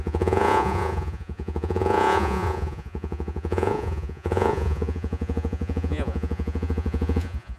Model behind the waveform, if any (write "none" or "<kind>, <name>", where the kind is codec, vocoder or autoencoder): vocoder, Vocos